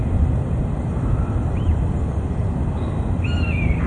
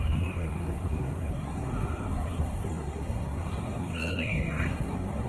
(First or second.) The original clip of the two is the first